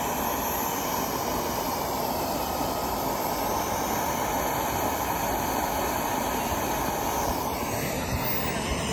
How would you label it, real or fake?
real